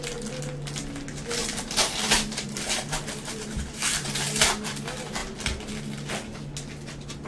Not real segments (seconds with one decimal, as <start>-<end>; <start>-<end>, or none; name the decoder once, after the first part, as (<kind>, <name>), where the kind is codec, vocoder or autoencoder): 1.4-4.8 (vocoder, BigVGAN v2)